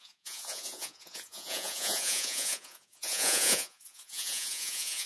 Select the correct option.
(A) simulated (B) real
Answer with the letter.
A